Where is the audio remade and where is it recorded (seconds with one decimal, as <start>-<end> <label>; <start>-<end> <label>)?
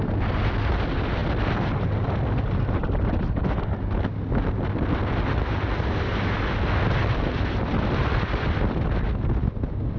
0.0-7.3 recorded; 7.3-8.8 remade; 8.8-10.0 recorded